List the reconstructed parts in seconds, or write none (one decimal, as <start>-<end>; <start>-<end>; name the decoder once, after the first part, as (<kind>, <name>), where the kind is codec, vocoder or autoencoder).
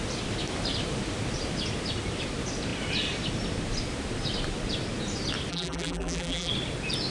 5.5-6.5 (vocoder, BigVGAN v2)